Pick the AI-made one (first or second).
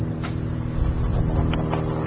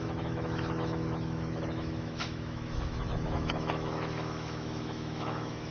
second